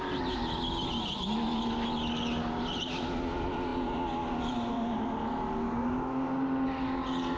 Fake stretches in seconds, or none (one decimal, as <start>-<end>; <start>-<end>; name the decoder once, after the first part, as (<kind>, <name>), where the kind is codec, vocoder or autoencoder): none